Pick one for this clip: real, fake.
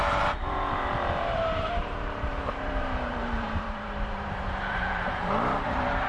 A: fake